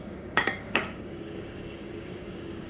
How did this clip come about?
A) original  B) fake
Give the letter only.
B